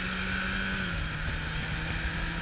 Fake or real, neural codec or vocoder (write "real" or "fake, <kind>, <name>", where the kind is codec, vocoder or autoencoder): real